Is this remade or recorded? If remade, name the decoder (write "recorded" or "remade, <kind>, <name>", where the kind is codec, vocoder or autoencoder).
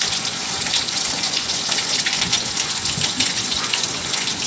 remade, vocoder, Vocos